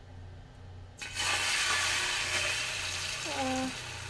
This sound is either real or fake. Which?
real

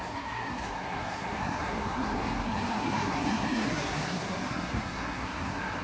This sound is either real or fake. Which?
fake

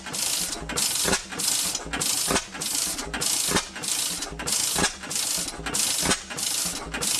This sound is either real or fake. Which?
real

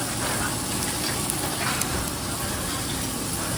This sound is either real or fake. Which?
real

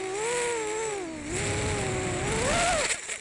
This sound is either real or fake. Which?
real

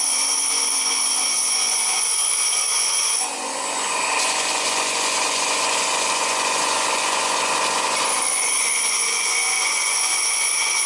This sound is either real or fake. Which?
fake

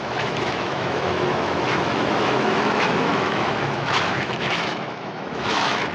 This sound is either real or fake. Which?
fake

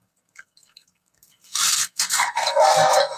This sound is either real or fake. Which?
fake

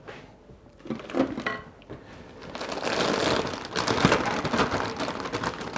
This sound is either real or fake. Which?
real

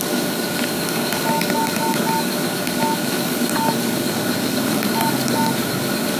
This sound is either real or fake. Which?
fake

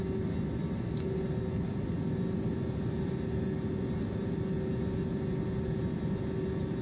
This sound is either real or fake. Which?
real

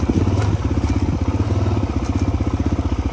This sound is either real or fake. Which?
real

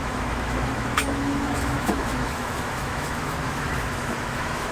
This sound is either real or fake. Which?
fake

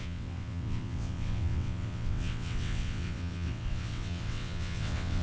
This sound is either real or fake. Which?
fake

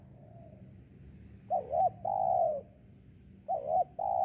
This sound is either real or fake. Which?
real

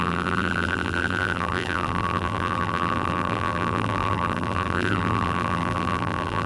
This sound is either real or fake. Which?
fake